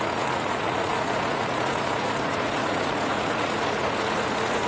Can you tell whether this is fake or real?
fake